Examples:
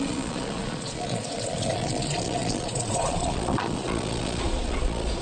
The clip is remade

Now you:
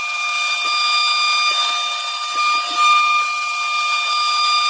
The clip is recorded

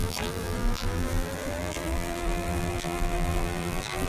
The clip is remade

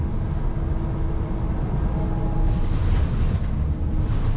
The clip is recorded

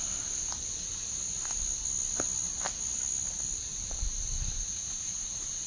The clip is recorded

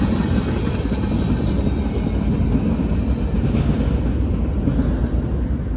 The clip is recorded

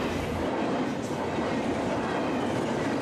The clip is remade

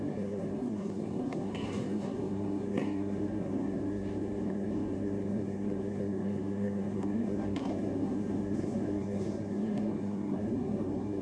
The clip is remade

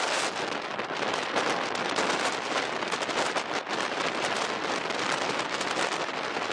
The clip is recorded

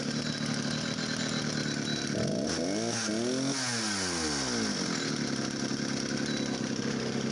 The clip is recorded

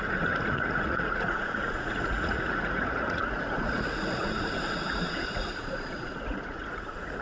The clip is remade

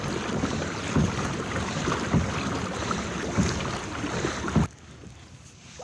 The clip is recorded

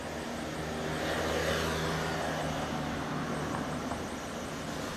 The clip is recorded